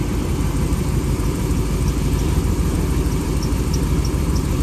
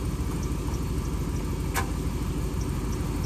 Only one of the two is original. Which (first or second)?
second